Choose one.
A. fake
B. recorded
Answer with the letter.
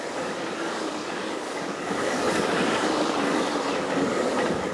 A